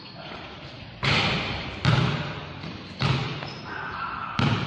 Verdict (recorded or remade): recorded